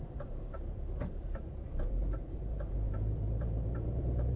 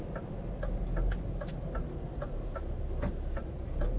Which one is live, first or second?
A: second